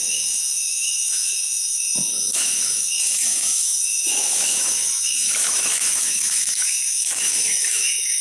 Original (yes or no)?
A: no